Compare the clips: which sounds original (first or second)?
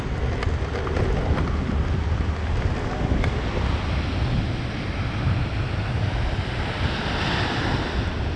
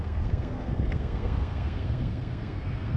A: first